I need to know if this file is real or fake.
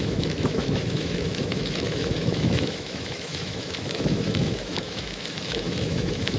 fake